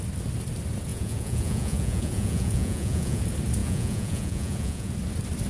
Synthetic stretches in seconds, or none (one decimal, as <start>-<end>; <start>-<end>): 0.9-3.2; 3.6-4.9